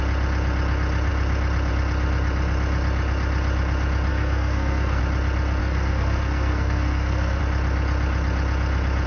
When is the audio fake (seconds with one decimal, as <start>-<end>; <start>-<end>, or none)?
4.1-5.0; 5.6-7.4

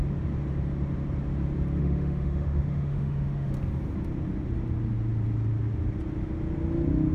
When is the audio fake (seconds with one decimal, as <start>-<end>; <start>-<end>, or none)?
1.8-3.5

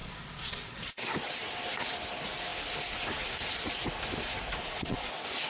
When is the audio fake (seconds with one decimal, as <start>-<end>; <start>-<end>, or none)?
0.0-1.0; 4.6-5.1

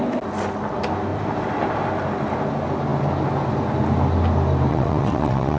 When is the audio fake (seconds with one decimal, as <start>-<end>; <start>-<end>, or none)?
4.7-5.6

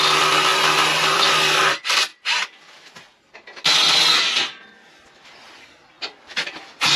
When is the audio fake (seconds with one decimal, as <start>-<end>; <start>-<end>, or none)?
0.0-2.1; 6.3-7.0